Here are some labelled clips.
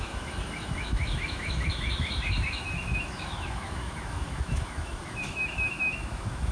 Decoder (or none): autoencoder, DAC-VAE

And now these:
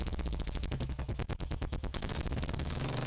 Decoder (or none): autoencoder, DAC-VAE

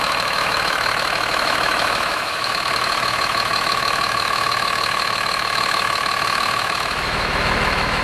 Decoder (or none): autoencoder, DAC-VAE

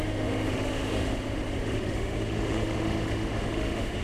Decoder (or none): autoencoder, DAC-VAE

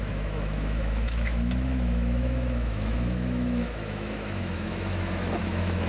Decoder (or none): autoencoder, DAC-VAE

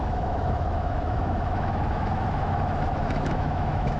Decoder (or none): autoencoder, DAC-VAE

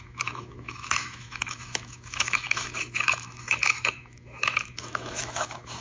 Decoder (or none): autoencoder, DAC-VAE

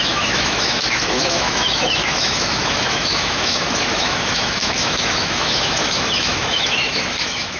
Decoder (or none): autoencoder, DAC-VAE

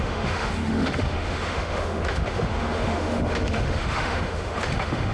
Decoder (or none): autoencoder, DAC-VAE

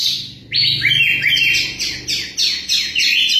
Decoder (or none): none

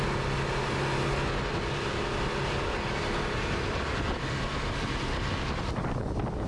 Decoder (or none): none